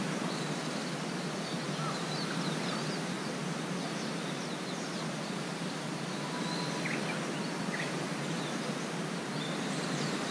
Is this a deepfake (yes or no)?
no